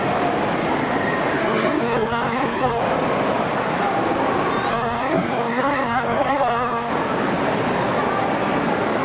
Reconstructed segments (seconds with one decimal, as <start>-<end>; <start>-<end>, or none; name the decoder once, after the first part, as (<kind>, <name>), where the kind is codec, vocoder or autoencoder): 1.4-2.8 (codec, SNAC); 4.7-6.9